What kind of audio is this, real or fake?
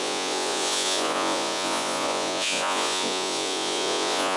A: fake